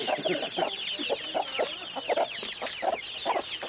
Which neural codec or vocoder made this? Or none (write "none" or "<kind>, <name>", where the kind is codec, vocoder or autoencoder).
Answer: none